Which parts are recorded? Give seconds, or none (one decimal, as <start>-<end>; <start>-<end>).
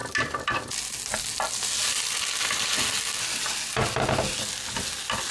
0.0-5.3